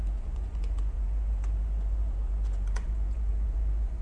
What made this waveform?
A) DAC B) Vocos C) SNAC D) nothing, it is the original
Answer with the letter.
B